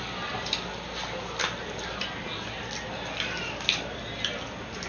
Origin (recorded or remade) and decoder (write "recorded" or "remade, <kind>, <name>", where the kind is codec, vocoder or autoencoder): recorded